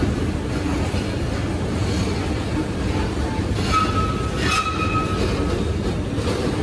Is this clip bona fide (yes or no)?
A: yes